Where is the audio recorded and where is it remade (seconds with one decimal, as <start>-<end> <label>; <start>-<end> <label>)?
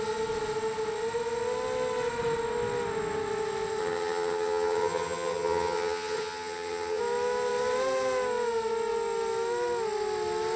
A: 0.0-3.8 recorded; 3.8-7.0 remade; 7.0-10.6 recorded